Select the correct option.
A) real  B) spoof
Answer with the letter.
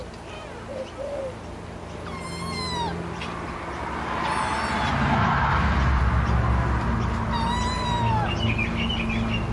A